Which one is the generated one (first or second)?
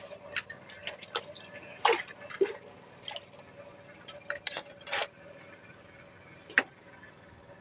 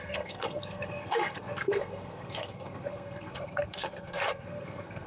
second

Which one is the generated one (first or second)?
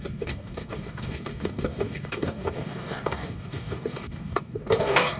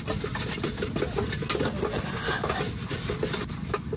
first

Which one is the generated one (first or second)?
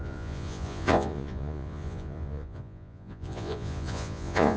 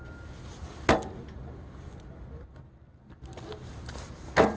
first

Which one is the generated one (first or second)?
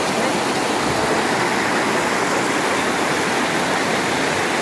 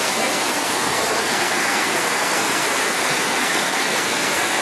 second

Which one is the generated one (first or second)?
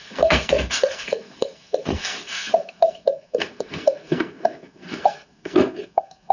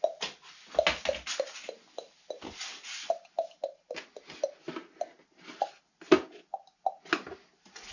first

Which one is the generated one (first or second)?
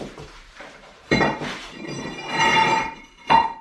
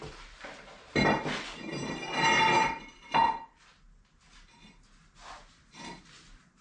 first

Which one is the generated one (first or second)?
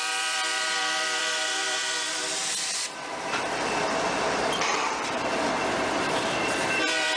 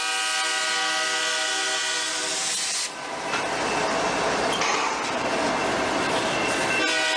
first